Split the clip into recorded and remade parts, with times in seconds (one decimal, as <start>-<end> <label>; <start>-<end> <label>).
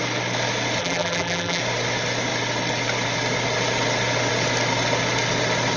0.0-0.8 recorded; 0.8-1.6 remade; 1.6-5.8 recorded